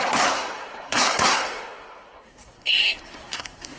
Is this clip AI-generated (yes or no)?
yes